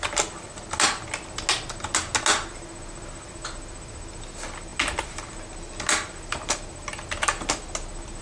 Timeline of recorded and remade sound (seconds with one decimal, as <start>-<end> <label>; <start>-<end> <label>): 0.0-8.2 recorded